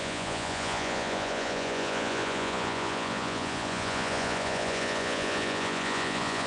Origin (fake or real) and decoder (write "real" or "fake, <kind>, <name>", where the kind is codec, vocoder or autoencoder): fake, vocoder, Vocos